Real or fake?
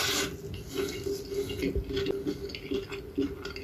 real